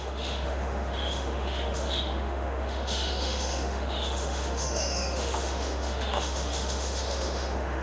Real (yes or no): no